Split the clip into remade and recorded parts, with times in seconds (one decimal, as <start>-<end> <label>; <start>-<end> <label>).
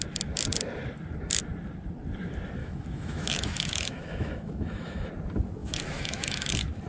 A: 0.0-2.6 recorded; 2.6-5.1 remade; 5.1-5.6 recorded; 5.6-6.5 remade; 6.5-6.9 recorded